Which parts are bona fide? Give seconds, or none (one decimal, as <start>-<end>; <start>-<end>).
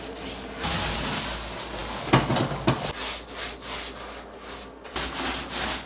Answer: 0.0-5.9